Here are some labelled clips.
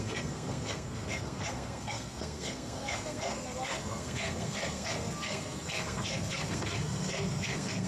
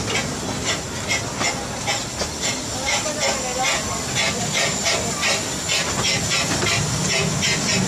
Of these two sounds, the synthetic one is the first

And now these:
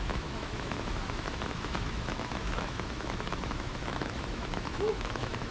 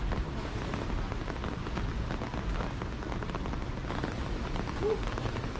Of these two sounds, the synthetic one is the first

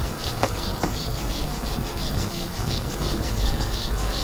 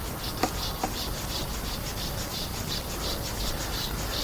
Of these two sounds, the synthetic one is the first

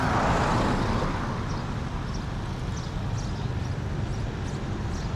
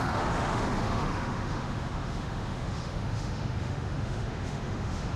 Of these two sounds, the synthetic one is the second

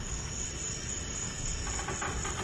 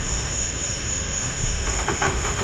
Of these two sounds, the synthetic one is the second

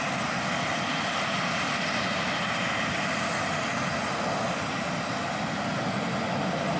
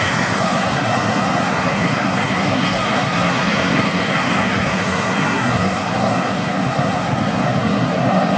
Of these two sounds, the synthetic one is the second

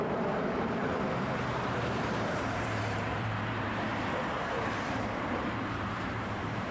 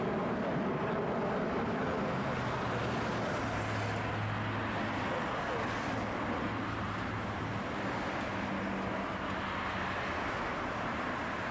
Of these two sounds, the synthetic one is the first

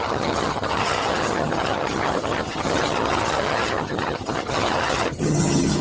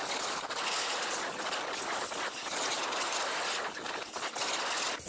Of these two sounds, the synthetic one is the first